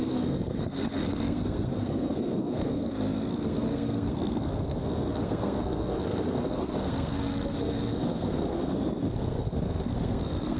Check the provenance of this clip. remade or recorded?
remade